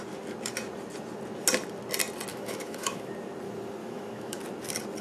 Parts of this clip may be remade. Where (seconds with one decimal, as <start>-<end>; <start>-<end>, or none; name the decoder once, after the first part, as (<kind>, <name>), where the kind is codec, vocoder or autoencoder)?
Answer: 2.3-3.1 (autoencoder, DAC-VAE); 3.8-4.4